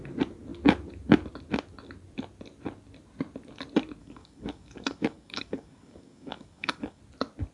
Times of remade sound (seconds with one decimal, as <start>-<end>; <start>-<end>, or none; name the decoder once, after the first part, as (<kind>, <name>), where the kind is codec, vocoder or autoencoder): 4.0-7.0 (codec, DAC)